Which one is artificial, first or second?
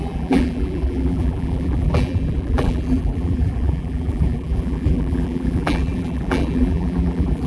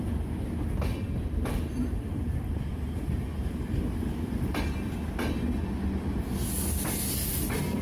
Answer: first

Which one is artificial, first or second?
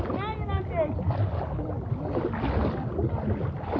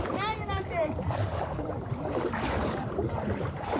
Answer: second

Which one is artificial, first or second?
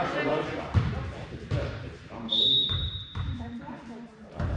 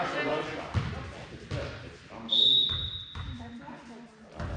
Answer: first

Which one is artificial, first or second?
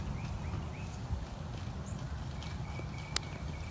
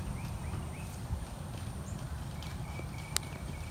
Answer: second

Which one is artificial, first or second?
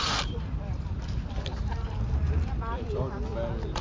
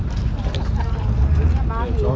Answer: first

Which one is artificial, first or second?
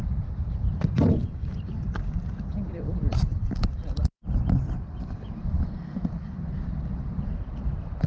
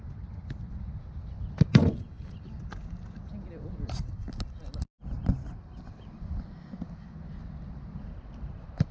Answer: first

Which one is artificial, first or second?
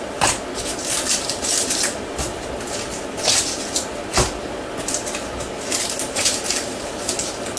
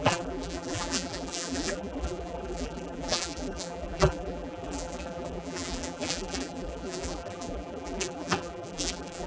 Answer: second